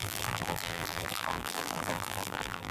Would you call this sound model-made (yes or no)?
yes